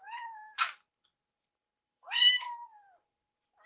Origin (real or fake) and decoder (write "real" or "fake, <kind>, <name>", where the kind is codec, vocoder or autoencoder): fake, vocoder, BigVGAN v2